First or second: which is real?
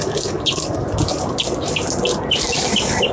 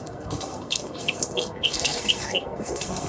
first